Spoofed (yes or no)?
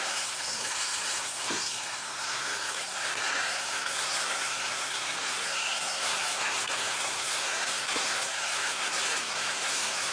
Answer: yes